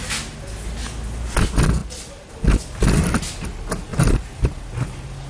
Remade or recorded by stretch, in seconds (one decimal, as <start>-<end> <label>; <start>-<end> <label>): 0.0-3.9 recorded; 3.9-4.6 remade; 4.6-5.3 recorded